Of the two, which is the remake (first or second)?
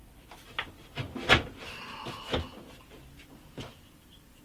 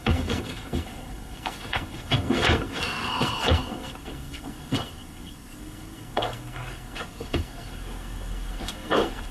second